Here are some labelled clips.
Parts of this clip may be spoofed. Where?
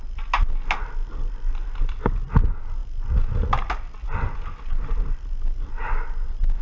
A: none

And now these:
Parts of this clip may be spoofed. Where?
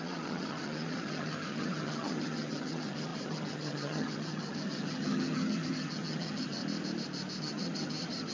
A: 0.0-6.6 (vocoder, HiFi-GAN); 7.4-8.3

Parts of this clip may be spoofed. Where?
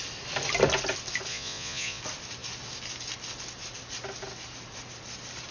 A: 1.3-2.0 (vocoder, Vocos)